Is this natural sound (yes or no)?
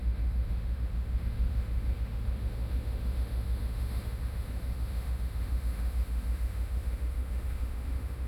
no